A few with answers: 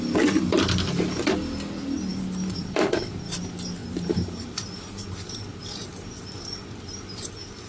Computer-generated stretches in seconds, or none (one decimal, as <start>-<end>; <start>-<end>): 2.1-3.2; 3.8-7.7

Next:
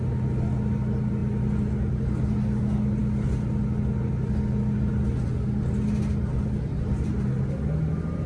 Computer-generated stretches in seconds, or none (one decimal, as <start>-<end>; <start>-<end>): none

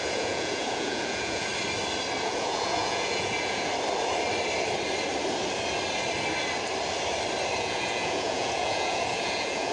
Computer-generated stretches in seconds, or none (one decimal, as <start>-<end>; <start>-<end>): 0.0-1.5; 2.2-3.7; 7.6-9.7